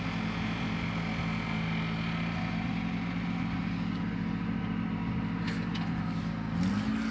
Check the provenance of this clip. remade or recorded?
recorded